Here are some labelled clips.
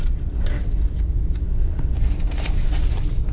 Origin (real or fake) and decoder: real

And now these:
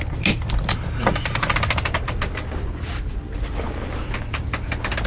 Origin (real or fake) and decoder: real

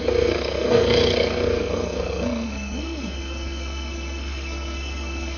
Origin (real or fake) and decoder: fake, codec, SNAC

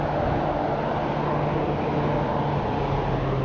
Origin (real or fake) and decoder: real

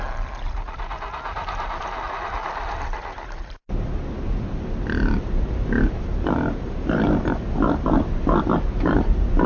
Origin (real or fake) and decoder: real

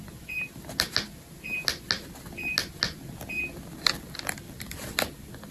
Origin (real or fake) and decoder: real